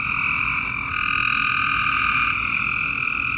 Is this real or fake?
real